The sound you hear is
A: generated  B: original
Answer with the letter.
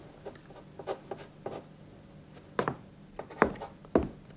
B